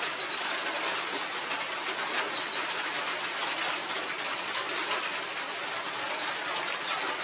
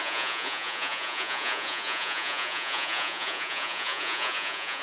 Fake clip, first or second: second